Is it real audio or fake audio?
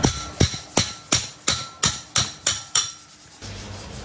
real